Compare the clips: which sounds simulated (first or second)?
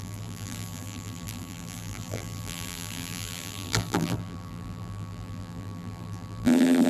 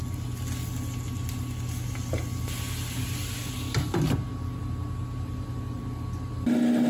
first